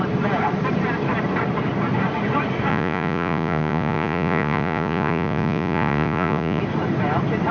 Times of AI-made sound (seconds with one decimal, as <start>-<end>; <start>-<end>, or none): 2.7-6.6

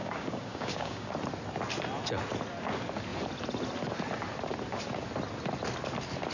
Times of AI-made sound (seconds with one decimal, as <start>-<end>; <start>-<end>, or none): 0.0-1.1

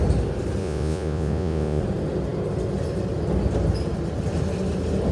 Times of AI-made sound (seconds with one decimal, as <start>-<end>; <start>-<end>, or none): 0.6-1.8

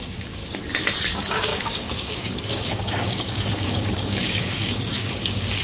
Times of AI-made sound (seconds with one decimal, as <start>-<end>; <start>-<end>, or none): 0.0-0.4; 1.1-5.6